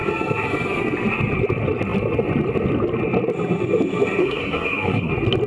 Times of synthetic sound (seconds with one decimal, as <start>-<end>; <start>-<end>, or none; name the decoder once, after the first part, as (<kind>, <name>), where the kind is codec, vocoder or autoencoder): 4.2-5.1 (codec, SNAC)